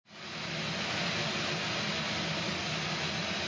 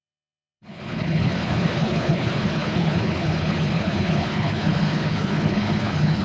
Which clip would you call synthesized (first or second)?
second